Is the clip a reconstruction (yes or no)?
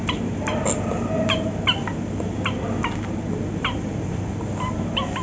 no